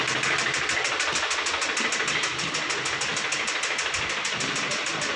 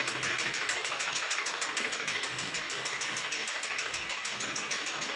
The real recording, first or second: first